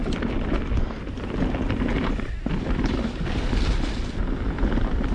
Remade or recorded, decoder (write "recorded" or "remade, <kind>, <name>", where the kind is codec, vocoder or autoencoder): recorded